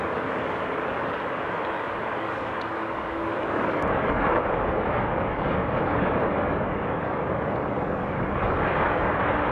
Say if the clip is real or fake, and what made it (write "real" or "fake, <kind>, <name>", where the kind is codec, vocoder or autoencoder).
fake, codec, DAC